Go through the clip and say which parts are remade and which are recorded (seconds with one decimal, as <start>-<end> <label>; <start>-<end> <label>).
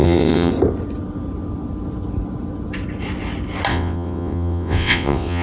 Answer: 0.0-0.5 remade; 0.5-3.7 recorded; 3.7-5.4 remade